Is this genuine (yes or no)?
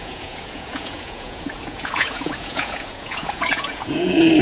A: no